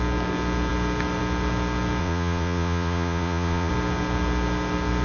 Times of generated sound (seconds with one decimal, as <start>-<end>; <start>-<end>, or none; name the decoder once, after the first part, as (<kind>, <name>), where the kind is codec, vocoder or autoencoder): 2.0-3.7 (vocoder, Vocos)